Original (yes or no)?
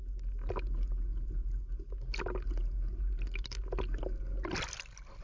yes